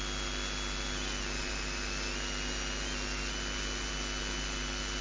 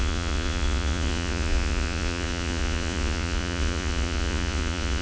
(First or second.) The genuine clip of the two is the first